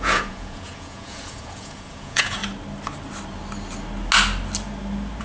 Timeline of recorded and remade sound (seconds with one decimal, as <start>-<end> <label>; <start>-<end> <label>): 0.0-2.4 remade; 2.4-5.2 recorded